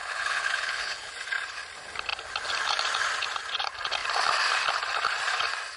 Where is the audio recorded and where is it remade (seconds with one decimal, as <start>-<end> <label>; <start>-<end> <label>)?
0.0-1.1 remade; 1.1-5.8 recorded